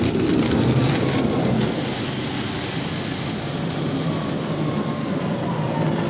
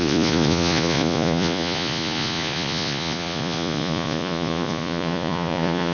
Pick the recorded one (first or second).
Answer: first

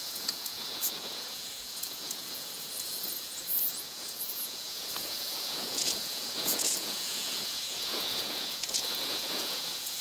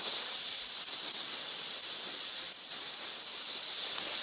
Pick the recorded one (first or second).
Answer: second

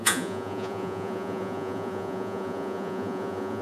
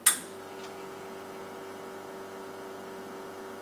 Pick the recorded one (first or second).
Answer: second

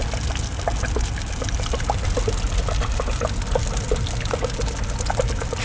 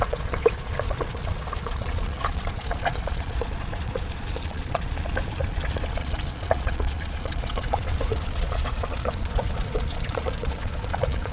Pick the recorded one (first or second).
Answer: first